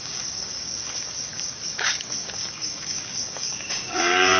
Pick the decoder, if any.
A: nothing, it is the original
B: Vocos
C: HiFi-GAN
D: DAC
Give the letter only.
D